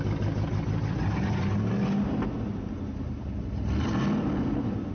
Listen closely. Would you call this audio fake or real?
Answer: real